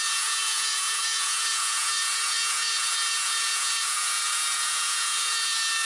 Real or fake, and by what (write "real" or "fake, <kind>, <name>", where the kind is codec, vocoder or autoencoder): fake, vocoder, Vocos